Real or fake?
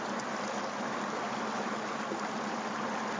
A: real